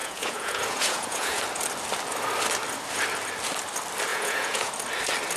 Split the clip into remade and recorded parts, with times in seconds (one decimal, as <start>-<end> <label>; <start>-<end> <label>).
0.0-1.4 remade; 1.4-4.1 recorded; 4.1-4.7 remade; 4.7-5.4 recorded